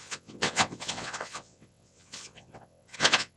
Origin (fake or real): fake